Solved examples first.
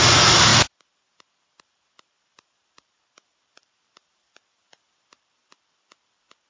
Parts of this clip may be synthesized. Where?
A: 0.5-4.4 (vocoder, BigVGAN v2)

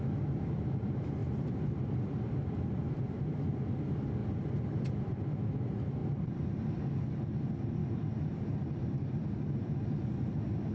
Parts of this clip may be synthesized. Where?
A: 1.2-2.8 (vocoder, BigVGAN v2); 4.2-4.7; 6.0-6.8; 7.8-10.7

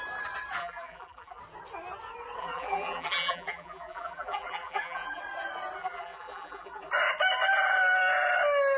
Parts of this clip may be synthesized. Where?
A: 0.6-1.4 (vocoder, BigVGAN v2); 2.4-5.2; 5.8-6.9

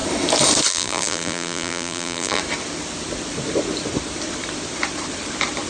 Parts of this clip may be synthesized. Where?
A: 0.7-2.4 (vocoder, BigVGAN v2)

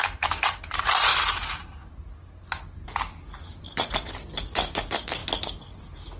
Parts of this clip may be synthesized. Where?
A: 0.0-1.1 (vocoder, BigVGAN v2); 4.8-5.2; 5.8-6.2

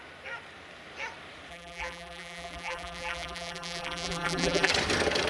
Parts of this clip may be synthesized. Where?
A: 1.5-4.7 (vocoder, BigVGAN v2)